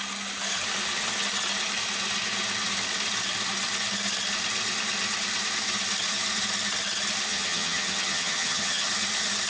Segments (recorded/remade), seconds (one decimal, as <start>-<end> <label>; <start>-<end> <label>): 0.0-7.3 recorded; 7.3-8.9 remade; 8.9-9.5 recorded